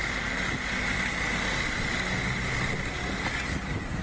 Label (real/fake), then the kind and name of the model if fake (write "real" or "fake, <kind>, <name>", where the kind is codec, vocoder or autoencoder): real